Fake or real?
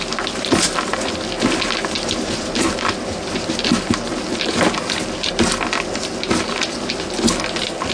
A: real